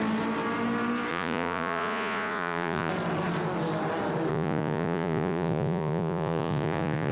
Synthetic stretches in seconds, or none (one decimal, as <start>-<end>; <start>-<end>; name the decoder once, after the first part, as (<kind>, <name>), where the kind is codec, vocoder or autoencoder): 1.1-2.9 (vocoder, Vocos); 4.3-7.1